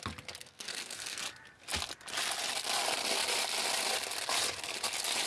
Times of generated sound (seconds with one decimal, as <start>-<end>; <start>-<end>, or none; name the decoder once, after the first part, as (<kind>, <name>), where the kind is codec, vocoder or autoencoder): 0.4-1.2 (codec, SNAC)

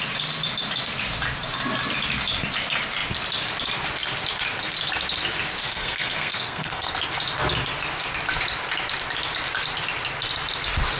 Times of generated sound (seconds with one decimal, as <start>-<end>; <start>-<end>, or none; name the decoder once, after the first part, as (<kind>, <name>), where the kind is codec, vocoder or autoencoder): 5.6-6.9 (codec, SNAC)

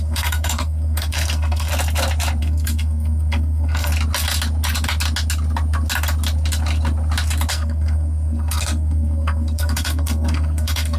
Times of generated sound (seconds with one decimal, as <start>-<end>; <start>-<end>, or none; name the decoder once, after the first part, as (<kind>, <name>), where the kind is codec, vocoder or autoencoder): 0.0-1.7 (codec, SNAC); 2.4-3.9; 7.5-11.0

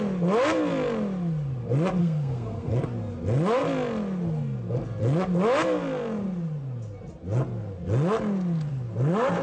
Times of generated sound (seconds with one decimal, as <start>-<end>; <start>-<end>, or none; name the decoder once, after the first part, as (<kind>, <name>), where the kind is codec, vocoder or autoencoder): 2.0-2.7 (codec, SNAC)